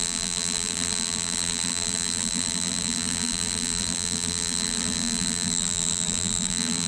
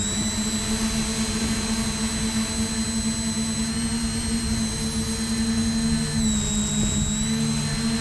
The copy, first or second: first